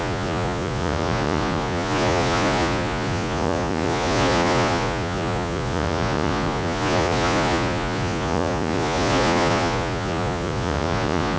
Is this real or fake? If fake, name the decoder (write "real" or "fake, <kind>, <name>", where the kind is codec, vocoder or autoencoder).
fake, vocoder, Vocos